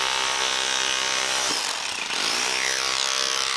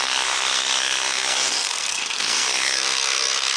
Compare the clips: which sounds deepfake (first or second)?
second